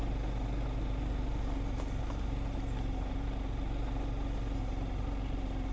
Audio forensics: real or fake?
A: real